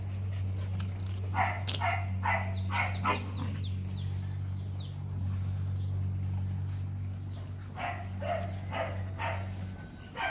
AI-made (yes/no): no